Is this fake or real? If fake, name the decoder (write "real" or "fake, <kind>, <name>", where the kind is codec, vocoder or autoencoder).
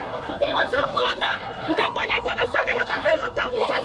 fake, codec, SNAC